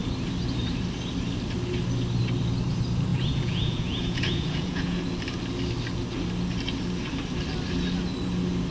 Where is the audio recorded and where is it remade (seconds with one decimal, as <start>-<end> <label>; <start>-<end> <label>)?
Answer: 0.0-3.1 recorded; 3.1-5.0 remade; 5.0-8.7 recorded